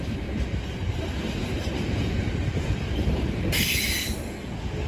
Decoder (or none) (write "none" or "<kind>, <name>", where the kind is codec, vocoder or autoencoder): none